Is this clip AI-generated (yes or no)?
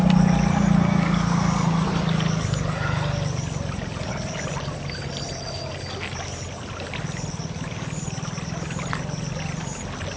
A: no